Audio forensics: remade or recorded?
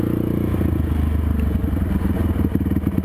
recorded